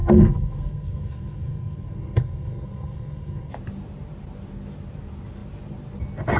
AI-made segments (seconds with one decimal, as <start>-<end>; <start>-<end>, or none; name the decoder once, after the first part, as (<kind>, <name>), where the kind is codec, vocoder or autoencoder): 0.0-3.5 (codec, SNAC)